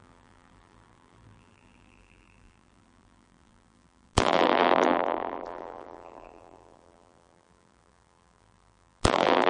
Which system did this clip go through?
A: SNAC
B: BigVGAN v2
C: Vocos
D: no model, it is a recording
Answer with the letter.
B